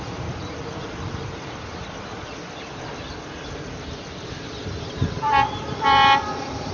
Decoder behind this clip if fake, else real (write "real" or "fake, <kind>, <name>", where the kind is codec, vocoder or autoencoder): fake, vocoder, BigVGAN v2